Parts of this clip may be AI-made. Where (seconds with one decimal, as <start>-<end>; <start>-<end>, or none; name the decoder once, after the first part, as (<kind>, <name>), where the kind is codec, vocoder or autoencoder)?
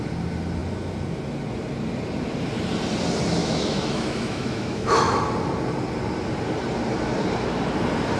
3.4-5.2 (autoencoder, DAC-VAE)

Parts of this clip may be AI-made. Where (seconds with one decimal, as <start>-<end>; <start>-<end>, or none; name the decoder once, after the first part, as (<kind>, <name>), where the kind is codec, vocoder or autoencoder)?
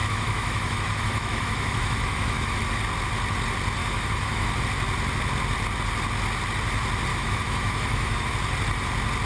0.0-2.6 (autoencoder, DAC-VAE); 3.8-4.5; 7.1-8.3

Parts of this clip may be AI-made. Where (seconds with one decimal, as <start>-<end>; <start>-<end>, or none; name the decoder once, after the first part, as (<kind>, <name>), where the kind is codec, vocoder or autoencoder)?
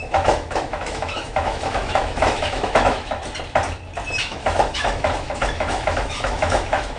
0.0-3.2 (autoencoder, DAC-VAE); 4.2-7.0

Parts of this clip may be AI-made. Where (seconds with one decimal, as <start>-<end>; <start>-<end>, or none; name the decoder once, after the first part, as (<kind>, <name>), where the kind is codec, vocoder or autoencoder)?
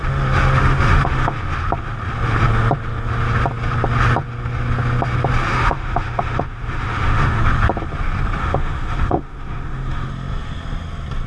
0.6-1.4 (autoencoder, DAC-VAE); 5.5-7.4; 8.4-10.1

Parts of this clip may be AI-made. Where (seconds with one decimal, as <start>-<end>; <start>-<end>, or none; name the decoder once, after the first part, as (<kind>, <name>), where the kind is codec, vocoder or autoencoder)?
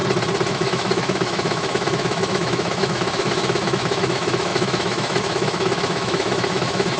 0.5-7.0 (autoencoder, DAC-VAE)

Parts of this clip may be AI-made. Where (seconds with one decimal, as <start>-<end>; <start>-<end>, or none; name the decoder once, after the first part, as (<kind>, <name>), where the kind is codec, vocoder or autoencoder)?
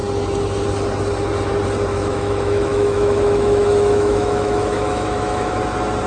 1.9-5.6 (autoencoder, DAC-VAE)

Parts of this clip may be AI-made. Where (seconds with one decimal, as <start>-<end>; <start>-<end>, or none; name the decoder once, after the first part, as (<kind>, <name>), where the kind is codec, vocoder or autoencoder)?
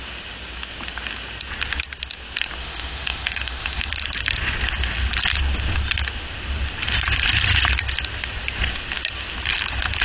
2.6-3.9 (autoencoder, DAC-VAE)